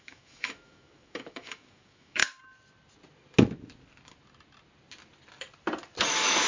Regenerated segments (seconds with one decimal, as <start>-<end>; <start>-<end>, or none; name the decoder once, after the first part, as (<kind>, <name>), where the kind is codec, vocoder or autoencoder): 0.0-2.2 (autoencoder, DAC-VAE); 6.1-6.5